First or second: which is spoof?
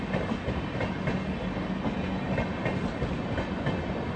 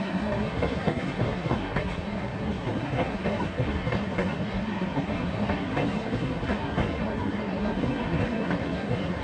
second